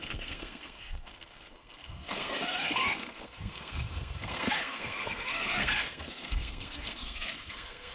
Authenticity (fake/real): fake